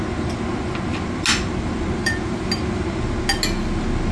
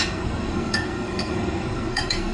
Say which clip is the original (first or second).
first